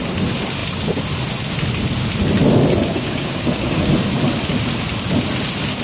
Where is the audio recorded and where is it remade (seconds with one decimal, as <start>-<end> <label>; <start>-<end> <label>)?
0.0-2.9 recorded; 2.9-3.9 remade; 3.9-5.8 recorded